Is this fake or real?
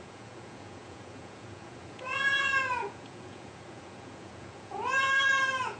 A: fake